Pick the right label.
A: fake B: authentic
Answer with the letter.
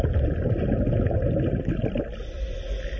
B